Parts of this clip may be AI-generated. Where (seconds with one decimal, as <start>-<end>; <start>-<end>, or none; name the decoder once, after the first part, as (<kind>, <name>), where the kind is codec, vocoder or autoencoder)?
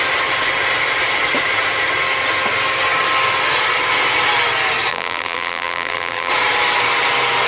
4.9-6.3 (vocoder, BigVGAN v2)